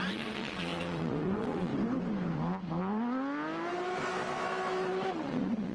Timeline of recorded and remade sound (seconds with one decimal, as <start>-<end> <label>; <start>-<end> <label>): 0.0-1.7 remade; 1.7-5.1 recorded; 5.1-5.7 remade